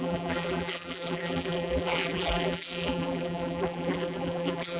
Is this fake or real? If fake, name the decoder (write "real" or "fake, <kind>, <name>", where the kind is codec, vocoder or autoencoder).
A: fake, vocoder, BigVGAN v2